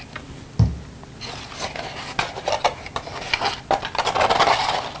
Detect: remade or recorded recorded